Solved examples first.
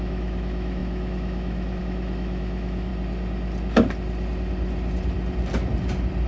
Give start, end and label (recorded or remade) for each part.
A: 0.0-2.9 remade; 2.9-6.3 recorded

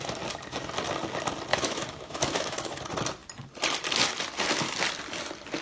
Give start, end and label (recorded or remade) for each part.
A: 0.0-1.5 recorded; 1.5-2.8 remade; 2.8-5.6 recorded